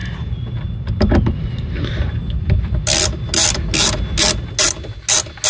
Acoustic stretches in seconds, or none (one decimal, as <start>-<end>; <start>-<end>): 0.0-5.5